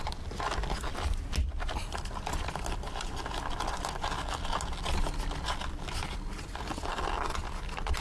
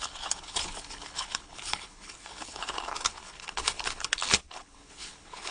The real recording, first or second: first